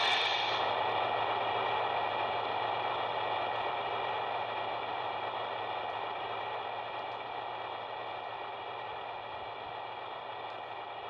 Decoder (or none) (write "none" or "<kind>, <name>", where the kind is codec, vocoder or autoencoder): none